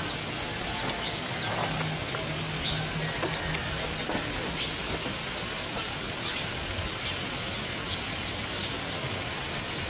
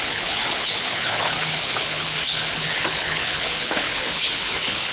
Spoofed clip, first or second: second